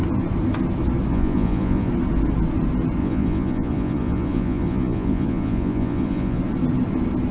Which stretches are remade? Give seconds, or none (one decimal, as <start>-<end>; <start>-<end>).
1.1-1.9; 3.0-6.4